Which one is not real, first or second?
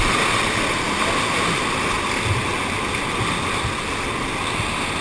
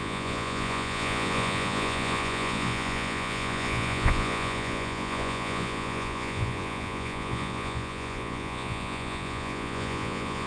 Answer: second